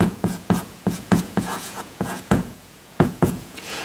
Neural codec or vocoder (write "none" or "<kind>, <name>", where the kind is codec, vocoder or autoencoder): vocoder, Vocos